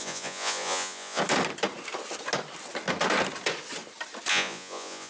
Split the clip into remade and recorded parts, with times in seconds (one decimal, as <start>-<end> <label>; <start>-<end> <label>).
0.0-1.2 remade; 1.2-4.3 recorded; 4.3-5.1 remade